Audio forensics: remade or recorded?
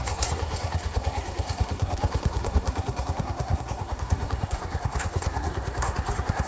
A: remade